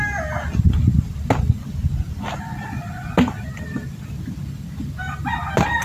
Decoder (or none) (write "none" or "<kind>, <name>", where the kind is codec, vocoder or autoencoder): none